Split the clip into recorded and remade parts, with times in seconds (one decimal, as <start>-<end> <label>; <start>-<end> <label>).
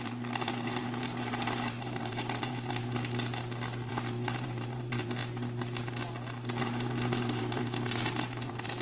0.0-2.8 remade; 2.8-3.9 recorded; 3.9-5.2 remade; 5.2-6.6 recorded; 6.6-8.8 remade